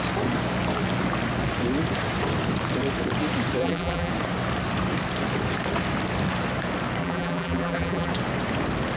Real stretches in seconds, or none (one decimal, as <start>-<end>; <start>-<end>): 0.0-3.6; 4.1-7.0; 8.1-9.0